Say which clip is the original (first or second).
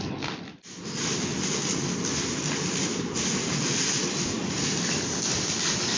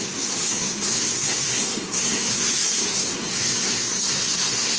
first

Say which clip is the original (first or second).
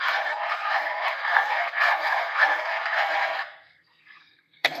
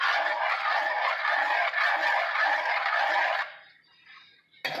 second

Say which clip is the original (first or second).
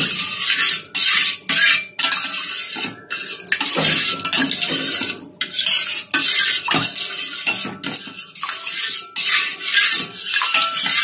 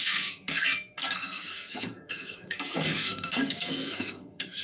first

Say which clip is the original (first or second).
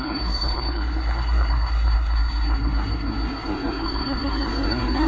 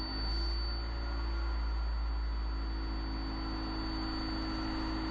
second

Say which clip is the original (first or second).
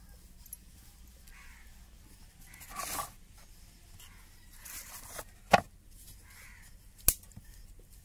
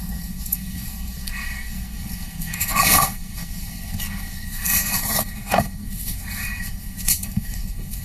first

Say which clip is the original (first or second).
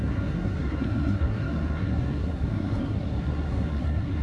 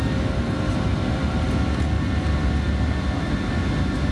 second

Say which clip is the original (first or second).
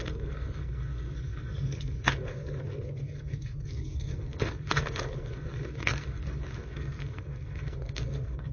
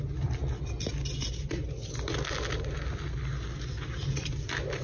second